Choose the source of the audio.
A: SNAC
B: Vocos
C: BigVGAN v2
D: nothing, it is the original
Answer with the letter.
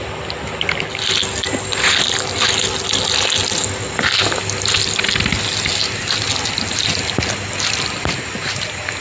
D